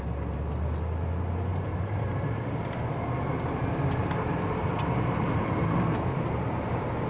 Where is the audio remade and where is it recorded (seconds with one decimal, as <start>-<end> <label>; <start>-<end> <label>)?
0.0-1.5 recorded; 1.5-3.0 remade; 3.0-4.0 recorded; 4.0-7.1 remade

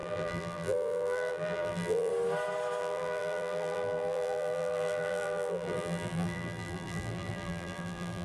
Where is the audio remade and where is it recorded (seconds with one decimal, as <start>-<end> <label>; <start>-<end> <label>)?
0.0-2.1 remade; 2.1-2.8 recorded; 2.8-8.2 remade